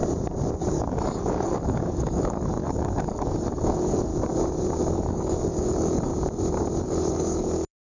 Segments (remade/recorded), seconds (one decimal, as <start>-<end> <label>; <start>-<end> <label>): 0.0-0.7 recorded; 0.7-4.1 remade; 4.1-4.9 recorded; 4.9-6.1 remade; 6.1-6.8 recorded; 6.8-7.9 remade